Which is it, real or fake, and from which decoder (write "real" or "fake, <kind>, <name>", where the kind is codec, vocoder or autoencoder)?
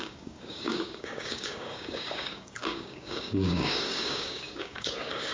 fake, codec, DAC